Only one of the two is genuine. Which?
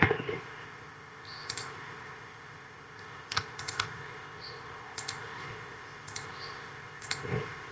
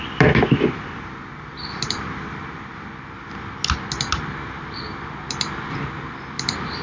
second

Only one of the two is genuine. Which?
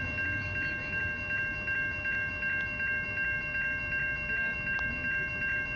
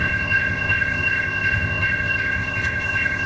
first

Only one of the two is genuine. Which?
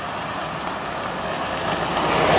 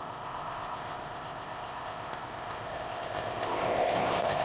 first